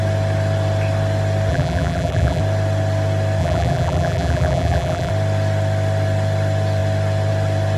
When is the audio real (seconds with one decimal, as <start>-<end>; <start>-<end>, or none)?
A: 0.0-1.5; 2.4-3.4; 5.1-7.8